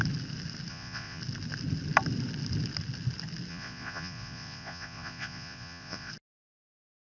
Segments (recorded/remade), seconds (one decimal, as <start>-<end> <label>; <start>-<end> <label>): 0.0-0.7 recorded; 0.7-1.2 remade; 1.2-3.5 recorded; 3.5-6.1 remade; 6.1-7.1 recorded